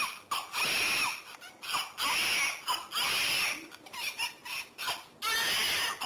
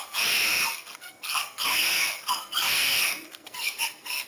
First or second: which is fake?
second